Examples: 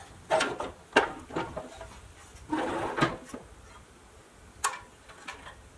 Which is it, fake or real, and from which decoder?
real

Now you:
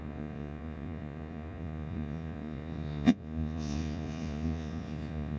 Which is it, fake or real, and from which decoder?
fake, vocoder, Vocos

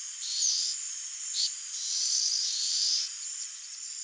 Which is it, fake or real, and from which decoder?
fake, vocoder, Vocos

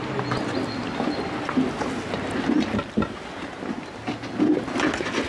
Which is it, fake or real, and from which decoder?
real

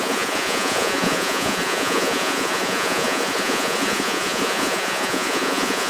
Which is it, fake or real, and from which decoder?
fake, vocoder, Vocos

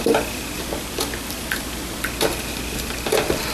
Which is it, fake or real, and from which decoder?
real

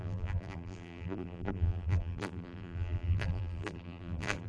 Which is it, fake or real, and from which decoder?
fake, vocoder, BigVGAN v2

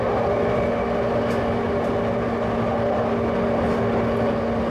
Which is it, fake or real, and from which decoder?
real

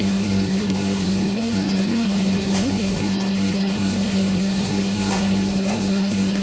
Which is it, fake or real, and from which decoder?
fake, codec, SNAC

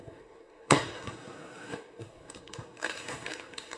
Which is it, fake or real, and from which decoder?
fake, codec, SNAC